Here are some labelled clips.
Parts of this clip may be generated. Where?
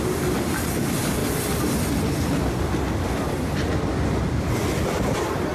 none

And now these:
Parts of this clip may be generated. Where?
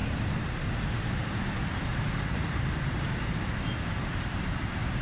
0.0-0.6; 1.9-5.0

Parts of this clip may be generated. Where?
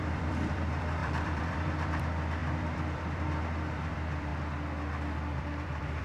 0.0-4.3; 5.4-6.0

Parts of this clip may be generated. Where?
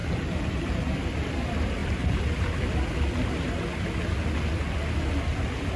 0.0-1.0; 1.8-2.8